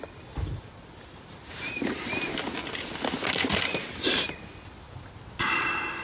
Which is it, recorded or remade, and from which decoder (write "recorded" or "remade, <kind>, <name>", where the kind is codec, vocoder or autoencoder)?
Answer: recorded